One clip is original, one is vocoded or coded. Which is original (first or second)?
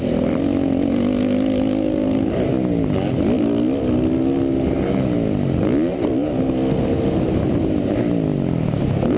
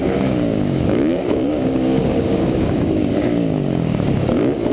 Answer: first